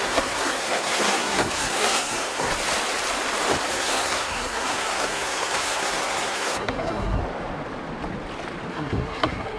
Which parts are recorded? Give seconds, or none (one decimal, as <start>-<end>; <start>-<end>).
2.5-3.7; 7.2-8.7